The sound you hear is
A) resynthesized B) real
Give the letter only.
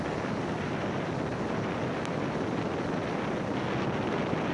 B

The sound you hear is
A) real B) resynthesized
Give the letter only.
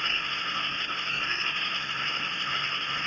B